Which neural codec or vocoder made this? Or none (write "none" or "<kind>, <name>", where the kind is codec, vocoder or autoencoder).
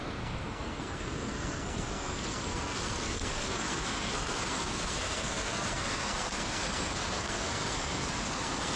codec, SNAC